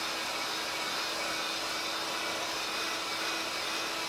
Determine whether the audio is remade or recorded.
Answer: recorded